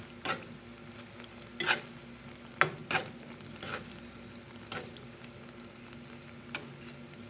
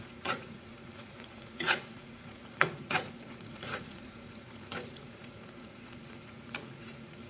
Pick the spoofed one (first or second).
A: second